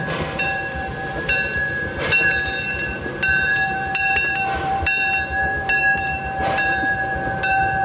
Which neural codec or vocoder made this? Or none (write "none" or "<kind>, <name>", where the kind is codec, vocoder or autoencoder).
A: vocoder, BigVGAN v2